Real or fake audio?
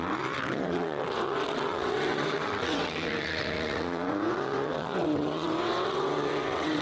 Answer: fake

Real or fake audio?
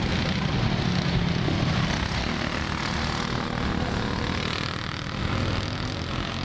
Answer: real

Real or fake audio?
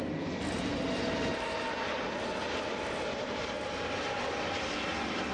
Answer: real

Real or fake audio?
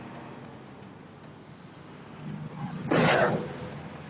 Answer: real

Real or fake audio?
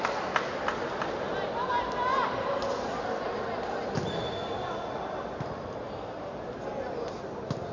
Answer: real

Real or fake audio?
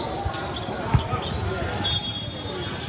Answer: real